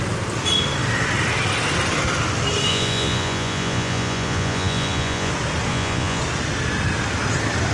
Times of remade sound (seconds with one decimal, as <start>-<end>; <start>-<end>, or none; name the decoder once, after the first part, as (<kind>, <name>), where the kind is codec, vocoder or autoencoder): 2.7-5.3 (vocoder, Vocos); 5.7-6.2